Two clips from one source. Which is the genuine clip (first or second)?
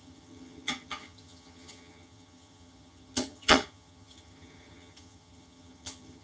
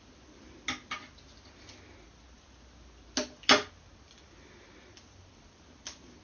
second